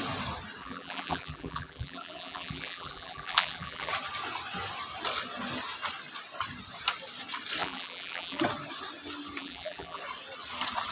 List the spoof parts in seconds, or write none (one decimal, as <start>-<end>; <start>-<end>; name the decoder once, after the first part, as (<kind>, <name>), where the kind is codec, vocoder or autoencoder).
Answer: 0.6-3.9 (vocoder, BigVGAN v2); 7.6-8.4; 9.4-10.0